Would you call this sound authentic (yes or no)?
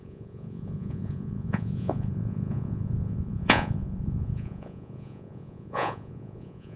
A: no